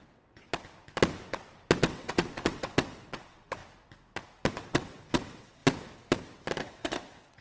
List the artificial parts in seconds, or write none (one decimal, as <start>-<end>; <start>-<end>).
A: 0.0-0.5; 1.8-3.6; 4.5-5.6; 6.6-7.4